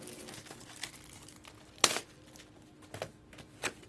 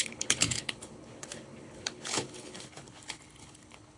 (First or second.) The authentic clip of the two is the first